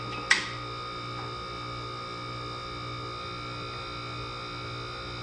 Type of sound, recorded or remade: recorded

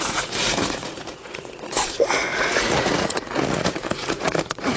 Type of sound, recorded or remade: remade